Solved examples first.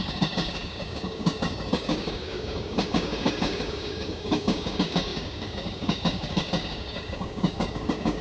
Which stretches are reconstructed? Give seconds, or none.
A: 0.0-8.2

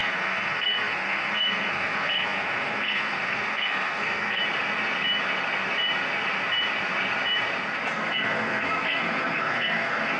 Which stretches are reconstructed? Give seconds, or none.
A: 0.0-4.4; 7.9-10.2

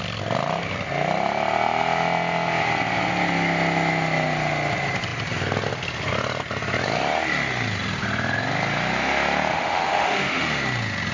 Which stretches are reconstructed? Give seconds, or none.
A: 9.5-10.4

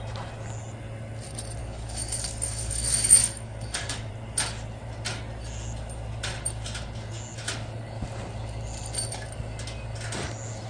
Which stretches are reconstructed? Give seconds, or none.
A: 1.6-4.1

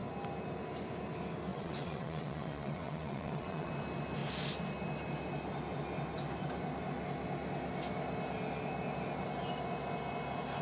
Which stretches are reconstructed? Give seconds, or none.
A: 1.5-3.7